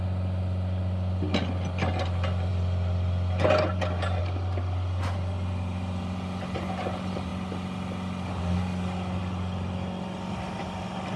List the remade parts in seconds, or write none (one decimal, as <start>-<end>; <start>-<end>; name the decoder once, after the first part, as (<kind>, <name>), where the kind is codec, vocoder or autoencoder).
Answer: none